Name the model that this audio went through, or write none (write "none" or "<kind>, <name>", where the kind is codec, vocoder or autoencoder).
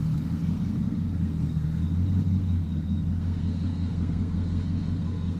codec, SNAC